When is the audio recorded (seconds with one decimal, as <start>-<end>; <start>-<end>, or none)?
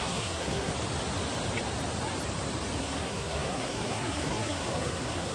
0.7-2.8